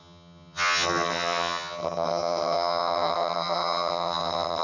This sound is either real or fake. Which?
fake